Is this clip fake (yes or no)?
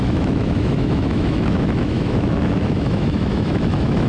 yes